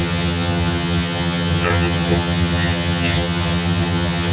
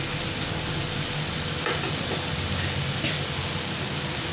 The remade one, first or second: first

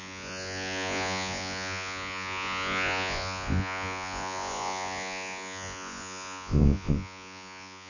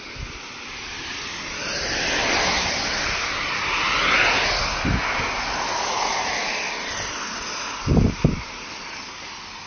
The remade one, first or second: first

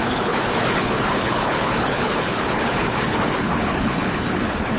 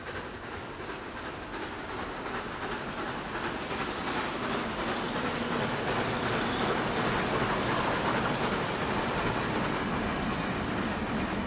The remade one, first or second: first